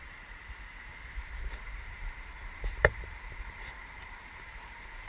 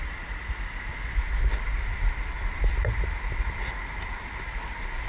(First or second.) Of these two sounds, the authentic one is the second